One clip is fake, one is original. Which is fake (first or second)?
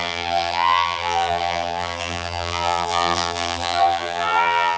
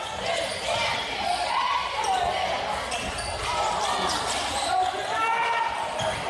first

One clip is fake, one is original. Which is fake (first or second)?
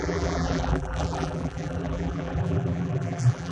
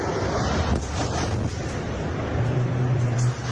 first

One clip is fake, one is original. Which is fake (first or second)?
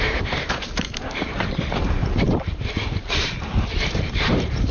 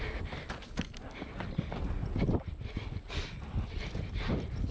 first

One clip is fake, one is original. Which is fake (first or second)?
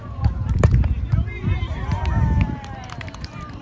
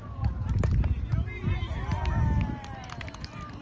first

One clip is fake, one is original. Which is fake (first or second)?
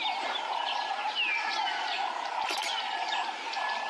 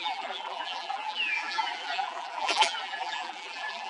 second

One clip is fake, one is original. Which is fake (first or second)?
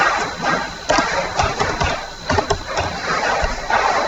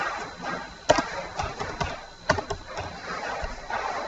first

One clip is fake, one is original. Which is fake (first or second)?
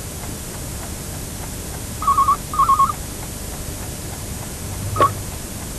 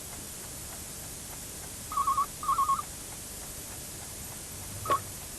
second